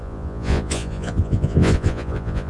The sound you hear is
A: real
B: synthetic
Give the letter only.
B